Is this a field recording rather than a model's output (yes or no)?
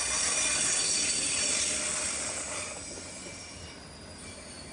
yes